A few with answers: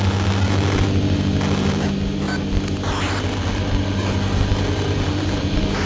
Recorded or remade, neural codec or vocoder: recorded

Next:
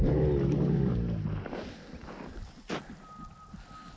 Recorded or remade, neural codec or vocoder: recorded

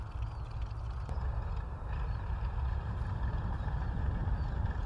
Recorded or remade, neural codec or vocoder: recorded